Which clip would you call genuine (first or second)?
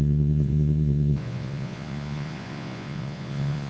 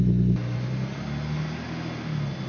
second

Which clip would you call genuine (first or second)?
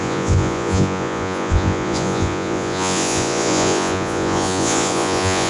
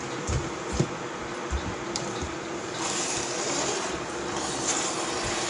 second